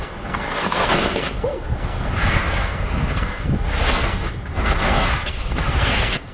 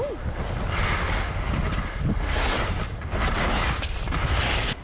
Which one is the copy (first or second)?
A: first